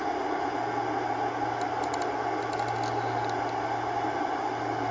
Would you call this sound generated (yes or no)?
no